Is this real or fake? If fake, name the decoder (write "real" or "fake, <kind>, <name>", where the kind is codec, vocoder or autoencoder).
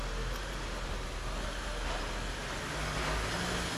real